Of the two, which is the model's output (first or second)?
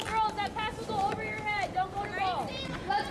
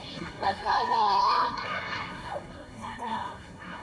second